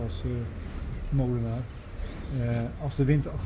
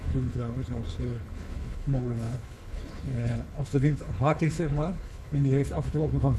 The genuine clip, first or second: first